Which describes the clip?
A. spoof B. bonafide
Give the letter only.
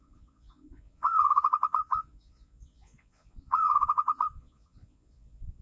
A